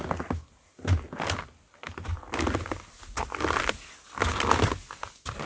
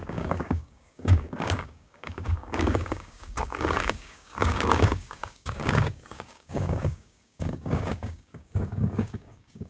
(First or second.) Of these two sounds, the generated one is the second